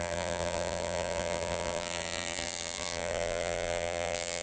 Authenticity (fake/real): fake